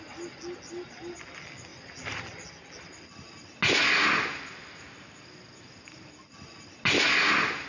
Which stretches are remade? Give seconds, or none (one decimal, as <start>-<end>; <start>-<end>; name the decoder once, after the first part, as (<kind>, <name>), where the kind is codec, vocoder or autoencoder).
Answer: none